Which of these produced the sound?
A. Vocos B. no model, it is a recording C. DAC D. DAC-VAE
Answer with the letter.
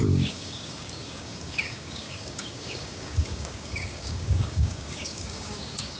C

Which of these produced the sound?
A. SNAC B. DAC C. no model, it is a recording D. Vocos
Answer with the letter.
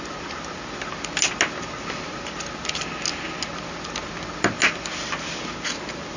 C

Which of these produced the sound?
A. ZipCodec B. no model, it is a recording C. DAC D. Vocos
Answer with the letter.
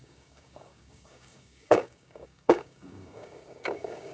C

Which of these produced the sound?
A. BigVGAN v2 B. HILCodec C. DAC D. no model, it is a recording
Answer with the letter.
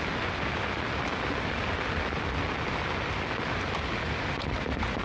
D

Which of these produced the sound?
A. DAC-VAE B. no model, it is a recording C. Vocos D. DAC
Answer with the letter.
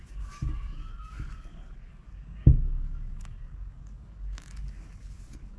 D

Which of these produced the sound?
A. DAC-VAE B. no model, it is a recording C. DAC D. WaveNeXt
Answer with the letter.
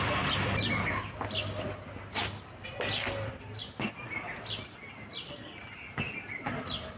B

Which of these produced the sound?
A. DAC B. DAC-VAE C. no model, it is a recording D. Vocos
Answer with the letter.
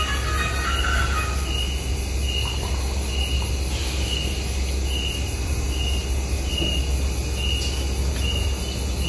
C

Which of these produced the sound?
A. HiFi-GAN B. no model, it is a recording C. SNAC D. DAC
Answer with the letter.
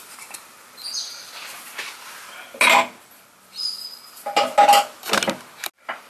B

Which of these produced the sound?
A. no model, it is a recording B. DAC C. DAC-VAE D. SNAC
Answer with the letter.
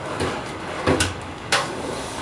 B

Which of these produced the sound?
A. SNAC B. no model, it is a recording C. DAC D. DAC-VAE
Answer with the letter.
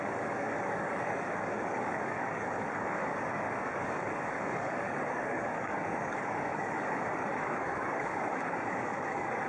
C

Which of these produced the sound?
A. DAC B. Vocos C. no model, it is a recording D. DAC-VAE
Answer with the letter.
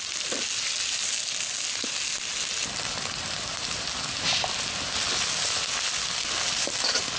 C